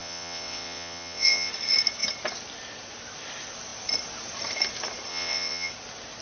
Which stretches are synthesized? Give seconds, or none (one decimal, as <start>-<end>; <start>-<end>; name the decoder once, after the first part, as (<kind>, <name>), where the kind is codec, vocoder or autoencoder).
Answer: 0.0-1.5 (vocoder, WaveNeXt); 5.1-5.7